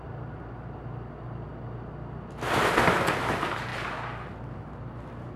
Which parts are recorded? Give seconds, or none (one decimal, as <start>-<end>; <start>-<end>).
1.5-3.2